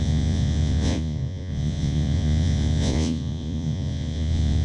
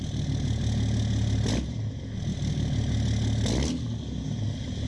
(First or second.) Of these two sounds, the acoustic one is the second